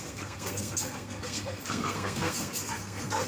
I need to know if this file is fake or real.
fake